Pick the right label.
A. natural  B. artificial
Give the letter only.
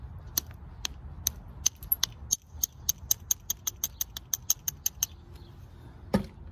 A